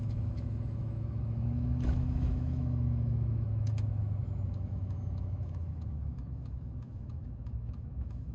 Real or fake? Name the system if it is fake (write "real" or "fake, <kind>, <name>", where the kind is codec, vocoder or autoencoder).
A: fake, autoencoder, DAC-VAE